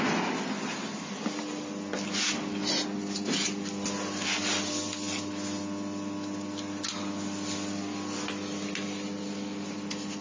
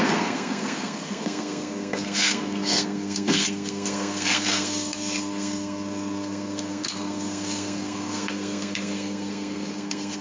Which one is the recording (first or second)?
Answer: first